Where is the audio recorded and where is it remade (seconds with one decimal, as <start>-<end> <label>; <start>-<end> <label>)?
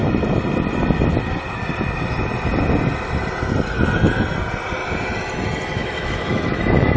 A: 0.0-5.8 recorded; 5.8-6.6 remade; 6.6-7.0 recorded